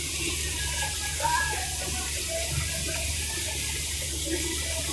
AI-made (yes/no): yes